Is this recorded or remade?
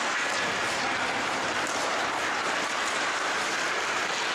recorded